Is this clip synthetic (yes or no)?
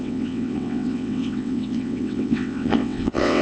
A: yes